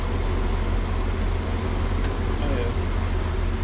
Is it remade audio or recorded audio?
recorded